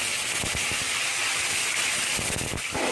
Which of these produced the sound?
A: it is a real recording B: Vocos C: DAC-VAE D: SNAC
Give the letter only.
A